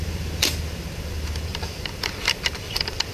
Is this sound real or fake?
fake